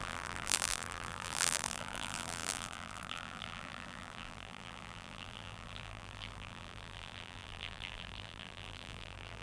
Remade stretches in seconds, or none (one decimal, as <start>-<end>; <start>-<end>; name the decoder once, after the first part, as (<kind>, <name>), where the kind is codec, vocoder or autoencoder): 0.0-9.4 (vocoder, BigVGAN v2)

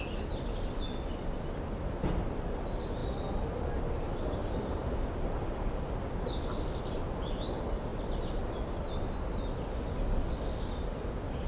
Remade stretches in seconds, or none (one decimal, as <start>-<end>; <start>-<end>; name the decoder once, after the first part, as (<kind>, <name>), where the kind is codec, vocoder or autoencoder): none

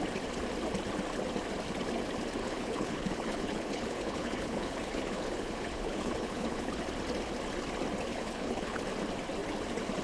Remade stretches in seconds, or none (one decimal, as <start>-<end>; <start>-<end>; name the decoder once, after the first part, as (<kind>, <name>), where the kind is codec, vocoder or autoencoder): 2.4-6.8 (codec, HILCodec); 8.1-8.8

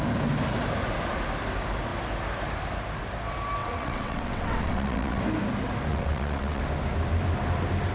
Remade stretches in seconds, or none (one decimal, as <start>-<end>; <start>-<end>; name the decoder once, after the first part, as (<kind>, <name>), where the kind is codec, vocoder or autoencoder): 3.6-5.2 (vocoder, WaveNeXt); 5.9-6.6